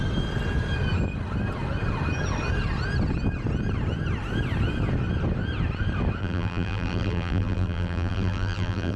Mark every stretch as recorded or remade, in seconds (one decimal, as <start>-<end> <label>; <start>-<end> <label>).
0.0-6.2 recorded; 6.2-9.0 remade